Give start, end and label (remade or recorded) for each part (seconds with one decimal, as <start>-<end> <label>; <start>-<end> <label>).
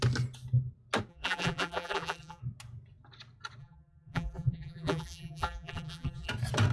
0.0-1.1 recorded; 1.1-2.4 remade; 2.4-3.6 recorded; 3.6-6.3 remade; 6.3-6.7 recorded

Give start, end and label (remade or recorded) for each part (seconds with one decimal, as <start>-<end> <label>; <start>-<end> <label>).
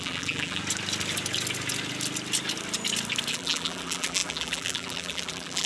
0.0-0.6 remade; 0.6-3.3 recorded; 3.3-5.7 remade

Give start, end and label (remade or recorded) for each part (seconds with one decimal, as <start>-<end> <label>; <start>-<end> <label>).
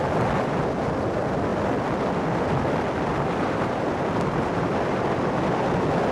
0.0-6.1 recorded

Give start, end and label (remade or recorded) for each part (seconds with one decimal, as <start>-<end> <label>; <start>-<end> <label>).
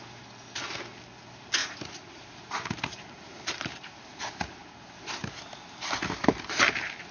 0.0-1.6 recorded; 1.6-4.0 remade; 4.0-6.2 recorded; 6.2-7.1 remade